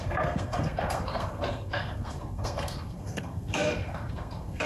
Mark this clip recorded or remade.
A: remade